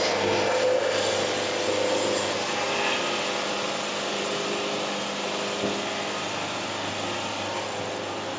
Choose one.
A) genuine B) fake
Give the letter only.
A